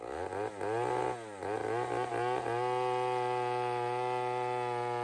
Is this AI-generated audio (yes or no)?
no